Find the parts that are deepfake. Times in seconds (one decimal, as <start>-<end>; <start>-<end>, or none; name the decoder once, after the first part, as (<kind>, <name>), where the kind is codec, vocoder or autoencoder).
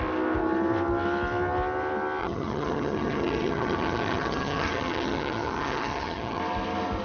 2.2-6.4 (vocoder, HiFi-GAN)